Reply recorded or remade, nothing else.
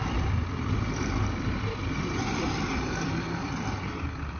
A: remade